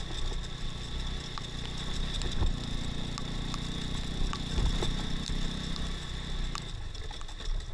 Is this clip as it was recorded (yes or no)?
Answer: yes